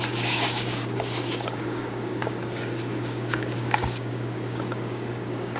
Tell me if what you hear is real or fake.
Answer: fake